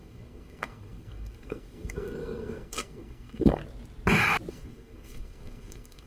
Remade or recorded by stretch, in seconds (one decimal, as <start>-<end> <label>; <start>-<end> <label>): 0.0-3.6 remade; 3.6-4.5 recorded; 4.5-6.1 remade

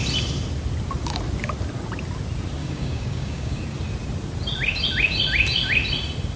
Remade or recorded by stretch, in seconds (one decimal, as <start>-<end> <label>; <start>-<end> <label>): 0.0-2.6 recorded; 2.6-3.6 remade; 3.6-6.4 recorded